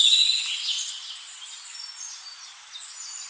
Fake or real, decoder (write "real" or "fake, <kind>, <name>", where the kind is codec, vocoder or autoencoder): real